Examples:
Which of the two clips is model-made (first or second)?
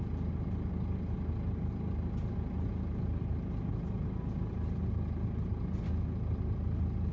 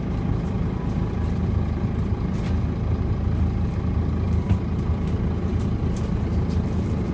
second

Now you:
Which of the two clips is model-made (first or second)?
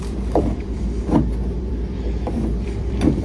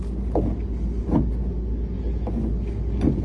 first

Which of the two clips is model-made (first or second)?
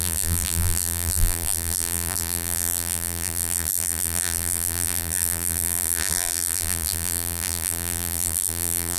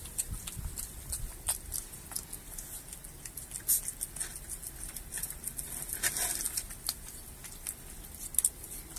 first